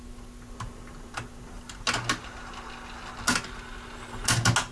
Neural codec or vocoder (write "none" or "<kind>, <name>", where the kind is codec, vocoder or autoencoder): none